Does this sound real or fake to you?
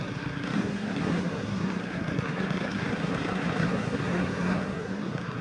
fake